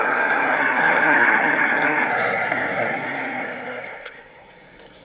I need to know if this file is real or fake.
fake